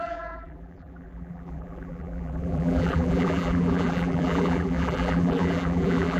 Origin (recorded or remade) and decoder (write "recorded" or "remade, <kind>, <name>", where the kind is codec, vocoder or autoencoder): remade, vocoder, BigVGAN v2